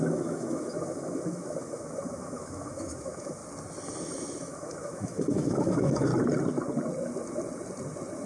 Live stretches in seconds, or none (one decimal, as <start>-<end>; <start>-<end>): 3.4-4.0; 6.1-8.3